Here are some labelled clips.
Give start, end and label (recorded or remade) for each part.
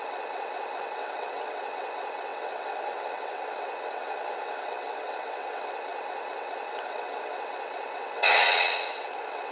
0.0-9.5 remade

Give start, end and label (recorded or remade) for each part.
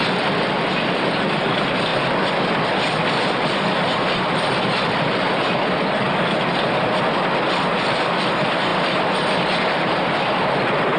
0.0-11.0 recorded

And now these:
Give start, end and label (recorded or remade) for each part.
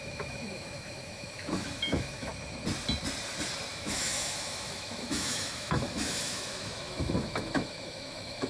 0.0-2.3 remade; 2.3-3.7 recorded; 3.7-8.5 remade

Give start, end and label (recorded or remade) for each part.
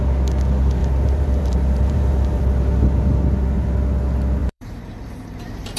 0.0-0.8 recorded; 0.8-2.4 remade; 2.4-4.4 recorded; 4.4-5.8 remade